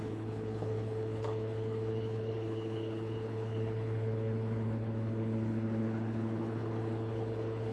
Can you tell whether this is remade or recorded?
remade